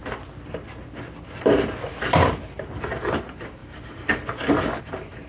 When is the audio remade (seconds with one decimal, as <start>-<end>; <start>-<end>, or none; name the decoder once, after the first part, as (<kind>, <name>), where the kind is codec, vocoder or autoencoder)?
2.8-5.3 (vocoder, BigVGAN v2)

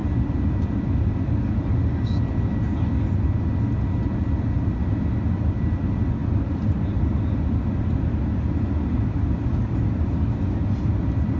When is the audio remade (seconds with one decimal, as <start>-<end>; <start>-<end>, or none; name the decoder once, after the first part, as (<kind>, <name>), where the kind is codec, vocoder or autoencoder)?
none

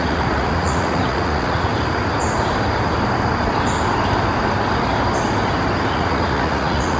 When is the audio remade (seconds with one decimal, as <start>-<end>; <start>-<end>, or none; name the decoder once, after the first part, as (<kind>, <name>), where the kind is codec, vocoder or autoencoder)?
0.0-1.7 (vocoder, Vocos); 5.9-7.0

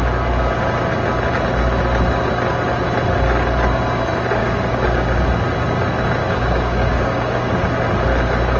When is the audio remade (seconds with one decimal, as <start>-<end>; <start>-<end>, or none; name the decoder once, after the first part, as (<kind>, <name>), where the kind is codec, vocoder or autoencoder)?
4.4-5.2 (codec, DAC); 6.2-7.5

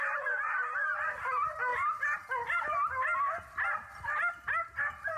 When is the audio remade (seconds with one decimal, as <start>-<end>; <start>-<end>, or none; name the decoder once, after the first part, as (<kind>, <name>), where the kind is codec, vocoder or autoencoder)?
none

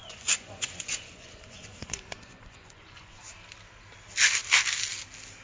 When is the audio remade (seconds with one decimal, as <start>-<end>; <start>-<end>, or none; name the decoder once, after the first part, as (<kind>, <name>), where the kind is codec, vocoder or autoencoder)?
0.0-3.2 (vocoder, Vocos)